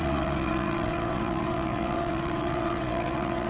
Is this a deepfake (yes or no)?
yes